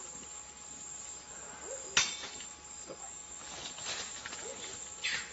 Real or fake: real